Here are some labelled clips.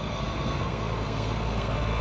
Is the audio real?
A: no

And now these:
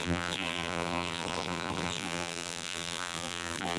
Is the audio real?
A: no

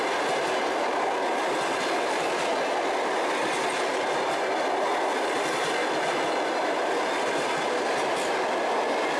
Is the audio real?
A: yes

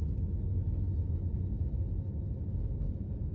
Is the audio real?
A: yes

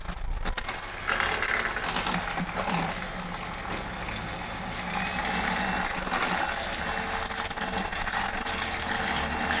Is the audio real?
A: yes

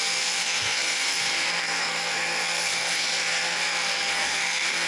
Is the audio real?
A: no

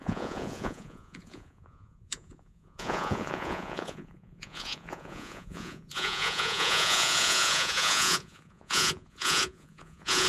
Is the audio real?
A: no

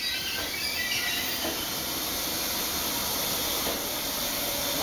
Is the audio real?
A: yes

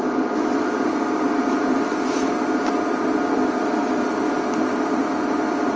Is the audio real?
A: yes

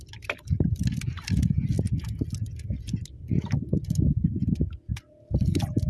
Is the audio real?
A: yes